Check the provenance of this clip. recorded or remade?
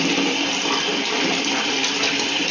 remade